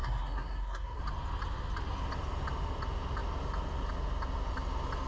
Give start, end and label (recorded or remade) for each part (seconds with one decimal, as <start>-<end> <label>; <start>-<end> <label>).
0.0-1.0 remade; 1.0-5.1 recorded